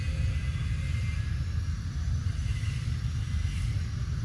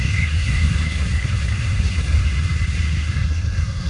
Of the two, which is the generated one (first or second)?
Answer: second